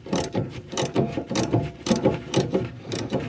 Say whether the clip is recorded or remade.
remade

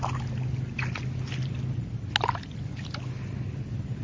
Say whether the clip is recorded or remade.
recorded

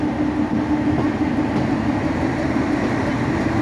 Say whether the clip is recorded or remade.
recorded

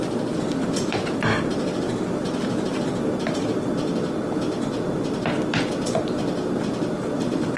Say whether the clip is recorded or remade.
recorded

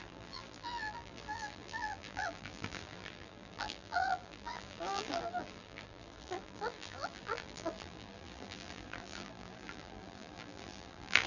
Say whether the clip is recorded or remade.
remade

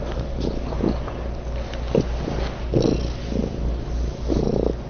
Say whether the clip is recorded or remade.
recorded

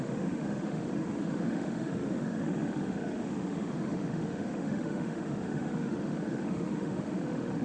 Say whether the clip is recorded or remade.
remade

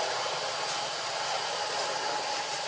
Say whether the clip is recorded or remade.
recorded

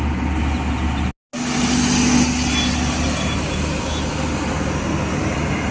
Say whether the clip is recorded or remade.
recorded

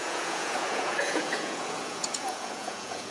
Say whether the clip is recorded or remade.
remade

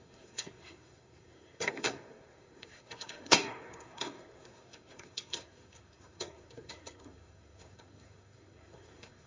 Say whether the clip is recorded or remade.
remade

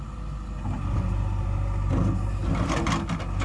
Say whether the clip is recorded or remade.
recorded